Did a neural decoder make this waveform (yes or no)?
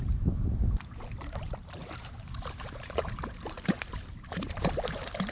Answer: yes